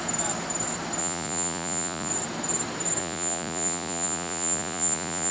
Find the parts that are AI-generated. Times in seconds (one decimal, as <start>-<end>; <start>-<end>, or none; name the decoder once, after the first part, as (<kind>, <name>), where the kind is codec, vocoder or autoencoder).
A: 1.0-2.1 (vocoder, Vocos); 3.0-5.3